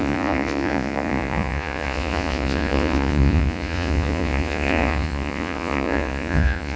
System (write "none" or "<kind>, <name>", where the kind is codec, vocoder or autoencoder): vocoder, Vocos